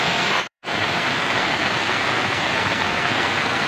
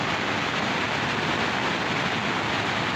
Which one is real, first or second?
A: second